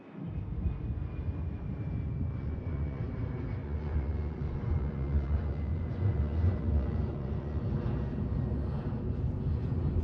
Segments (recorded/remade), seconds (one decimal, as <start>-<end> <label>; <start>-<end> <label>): 0.0-2.3 recorded; 2.3-3.0 remade; 3.0-3.6 recorded; 3.6-7.6 remade; 7.6-10.0 recorded